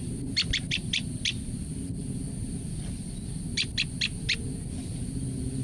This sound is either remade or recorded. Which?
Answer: recorded